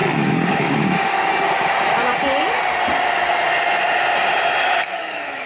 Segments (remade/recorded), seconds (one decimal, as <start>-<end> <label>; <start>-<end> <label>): 0.0-0.5 recorded; 0.5-1.3 remade; 1.3-4.6 recorded; 4.6-5.5 remade